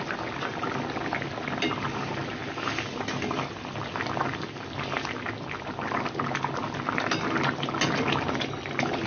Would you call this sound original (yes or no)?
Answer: yes